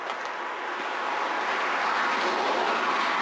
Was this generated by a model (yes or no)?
no